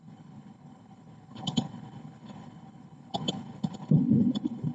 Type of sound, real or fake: fake